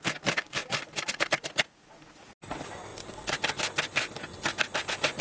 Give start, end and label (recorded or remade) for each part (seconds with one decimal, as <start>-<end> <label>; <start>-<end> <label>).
0.0-5.2 recorded